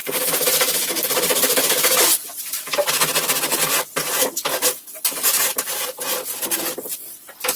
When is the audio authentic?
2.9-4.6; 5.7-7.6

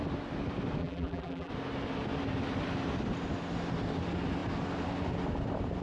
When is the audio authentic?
0.0-0.8; 1.5-5.8

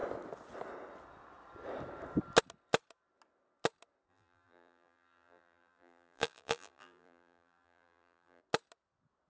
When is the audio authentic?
0.0-4.1; 8.4-9.3

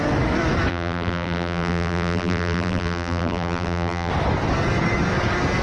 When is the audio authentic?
0.0-0.7; 4.1-5.6

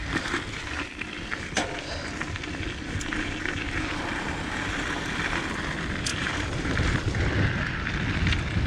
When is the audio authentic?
0.0-6.1; 6.8-8.7

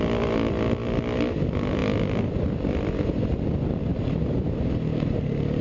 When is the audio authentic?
0.0-3.9